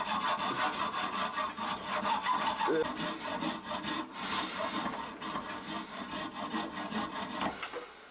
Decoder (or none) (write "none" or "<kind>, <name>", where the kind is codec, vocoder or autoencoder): none